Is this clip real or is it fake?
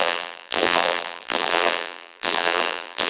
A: fake